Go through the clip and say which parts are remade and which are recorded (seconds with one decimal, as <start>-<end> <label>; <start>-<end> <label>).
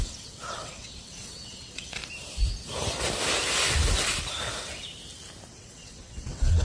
0.0-2.0 remade; 2.0-5.5 recorded; 5.5-6.6 remade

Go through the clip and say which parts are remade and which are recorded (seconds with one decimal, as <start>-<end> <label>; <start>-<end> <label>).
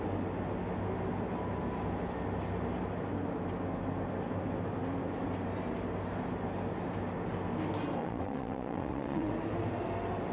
0.0-8.0 recorded; 8.0-9.3 remade; 9.3-10.3 recorded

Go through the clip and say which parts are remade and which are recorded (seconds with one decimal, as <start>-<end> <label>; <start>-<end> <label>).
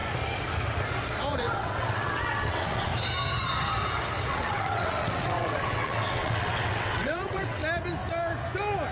0.0-1.3 recorded; 1.3-2.9 remade; 2.9-4.3 recorded; 4.3-7.6 remade; 7.6-8.9 recorded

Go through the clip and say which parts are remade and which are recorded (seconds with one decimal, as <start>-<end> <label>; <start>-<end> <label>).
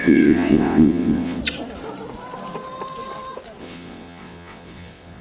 0.0-1.4 remade; 1.4-3.6 recorded; 3.6-5.2 remade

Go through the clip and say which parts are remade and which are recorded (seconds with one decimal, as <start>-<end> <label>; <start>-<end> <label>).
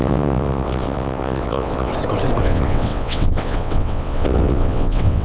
0.0-1.9 remade; 1.9-2.4 recorded; 2.4-5.2 remade